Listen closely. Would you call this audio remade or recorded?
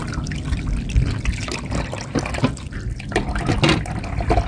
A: recorded